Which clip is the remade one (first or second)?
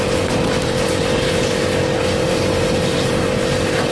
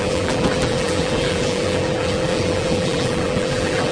second